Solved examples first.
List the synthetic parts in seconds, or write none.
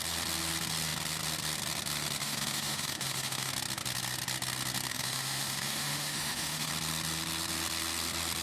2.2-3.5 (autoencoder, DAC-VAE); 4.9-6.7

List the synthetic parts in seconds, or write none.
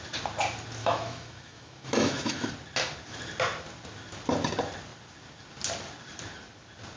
0.8-2.5 (autoencoder, DAC-VAE)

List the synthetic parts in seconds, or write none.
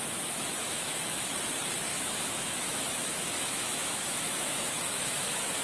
0.6-1.3 (autoencoder, DAC-VAE); 1.9-5.6